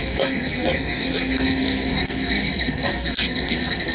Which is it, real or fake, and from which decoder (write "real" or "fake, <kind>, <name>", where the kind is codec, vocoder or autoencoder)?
fake, codec, SNAC